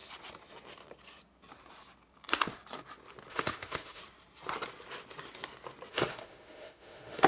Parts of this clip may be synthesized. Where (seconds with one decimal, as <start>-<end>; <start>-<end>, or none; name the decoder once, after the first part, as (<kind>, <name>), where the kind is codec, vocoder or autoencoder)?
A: 3.3-4.0 (autoencoder, DAC-VAE); 5.9-7.3